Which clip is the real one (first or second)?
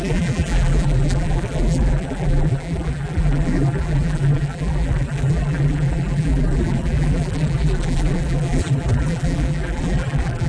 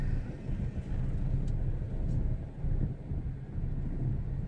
second